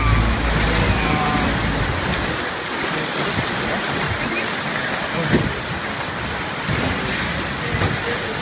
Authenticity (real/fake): real